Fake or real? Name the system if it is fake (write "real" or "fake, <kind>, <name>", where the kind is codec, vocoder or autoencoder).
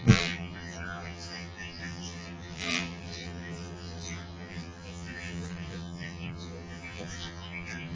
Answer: fake, vocoder, BigVGAN v2